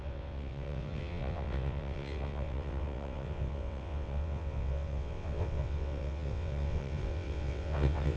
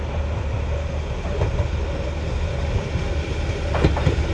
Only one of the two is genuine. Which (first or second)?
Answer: second